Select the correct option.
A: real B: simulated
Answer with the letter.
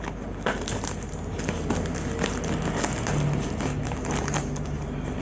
A